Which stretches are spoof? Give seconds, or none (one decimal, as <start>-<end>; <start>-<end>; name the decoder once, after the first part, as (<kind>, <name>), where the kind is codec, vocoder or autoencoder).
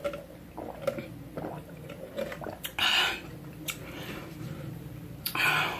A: 3.5-4.2 (vocoder, BigVGAN v2); 4.7-5.8